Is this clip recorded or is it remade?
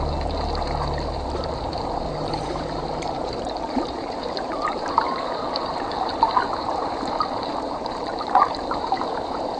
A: remade